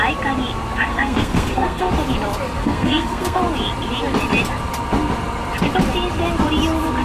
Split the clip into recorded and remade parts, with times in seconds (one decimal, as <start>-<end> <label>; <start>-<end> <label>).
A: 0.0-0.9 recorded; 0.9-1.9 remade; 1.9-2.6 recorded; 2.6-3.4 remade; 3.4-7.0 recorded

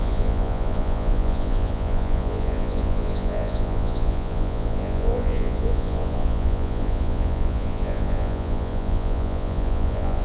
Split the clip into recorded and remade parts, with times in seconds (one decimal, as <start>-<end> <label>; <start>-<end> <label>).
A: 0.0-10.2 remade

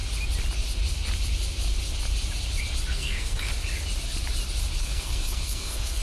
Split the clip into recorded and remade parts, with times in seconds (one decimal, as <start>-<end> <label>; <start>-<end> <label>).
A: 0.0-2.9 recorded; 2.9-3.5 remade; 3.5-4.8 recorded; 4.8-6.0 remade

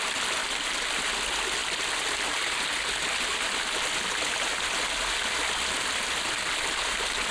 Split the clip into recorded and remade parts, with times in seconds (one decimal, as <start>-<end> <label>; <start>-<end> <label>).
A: 0.0-0.4 recorded; 0.4-1.1 remade; 1.1-7.3 recorded